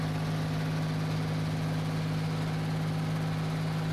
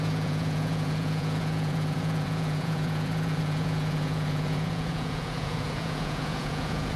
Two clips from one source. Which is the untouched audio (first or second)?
first